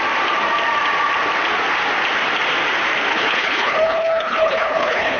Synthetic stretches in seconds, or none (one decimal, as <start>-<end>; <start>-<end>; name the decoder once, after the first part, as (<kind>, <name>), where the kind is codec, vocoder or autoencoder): 3.1-5.2 (codec, HILCodec)